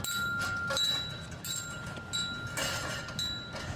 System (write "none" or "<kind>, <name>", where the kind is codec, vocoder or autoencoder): none